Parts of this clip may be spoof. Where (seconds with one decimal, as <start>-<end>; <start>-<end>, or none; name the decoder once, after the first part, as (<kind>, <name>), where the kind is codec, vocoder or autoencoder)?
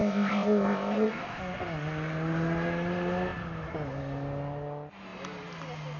0.0-1.4 (codec, ZipCodec)